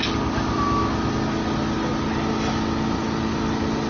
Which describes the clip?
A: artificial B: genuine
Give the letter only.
B